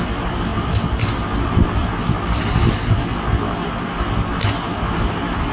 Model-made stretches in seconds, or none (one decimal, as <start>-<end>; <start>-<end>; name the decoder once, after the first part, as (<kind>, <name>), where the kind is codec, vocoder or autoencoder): none